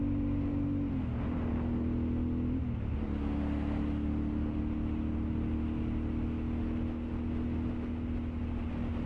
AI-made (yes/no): no